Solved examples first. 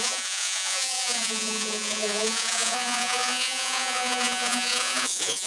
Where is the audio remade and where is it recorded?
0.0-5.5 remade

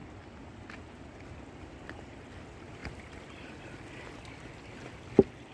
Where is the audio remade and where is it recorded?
0.0-5.5 recorded

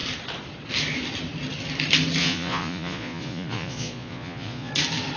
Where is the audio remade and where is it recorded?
0.0-2.2 recorded; 2.2-4.7 remade; 4.7-5.2 recorded

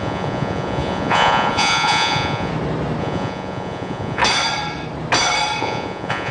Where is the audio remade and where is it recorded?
0.0-2.5 remade; 2.5-3.0 recorded; 3.0-4.2 remade; 4.2-5.6 recorded; 5.6-6.3 remade

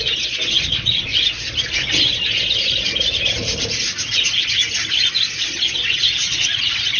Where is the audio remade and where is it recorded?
0.0-1.1 remade; 1.1-5.3 recorded; 5.3-7.0 remade

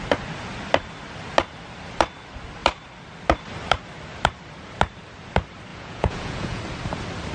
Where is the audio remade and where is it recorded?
0.0-5.7 recorded; 5.7-6.6 remade; 6.6-7.3 recorded

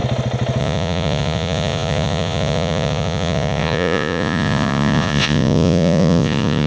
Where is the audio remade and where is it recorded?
0.0-0.6 recorded; 0.6-6.7 remade